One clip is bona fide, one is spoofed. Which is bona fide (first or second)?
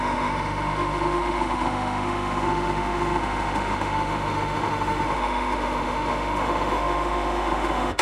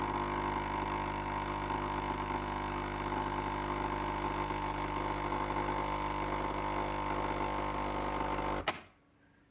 second